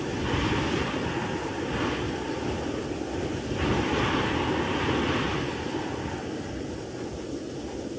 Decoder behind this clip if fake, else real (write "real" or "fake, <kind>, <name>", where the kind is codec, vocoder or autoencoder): real